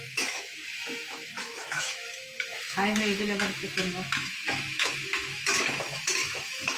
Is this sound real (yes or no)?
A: no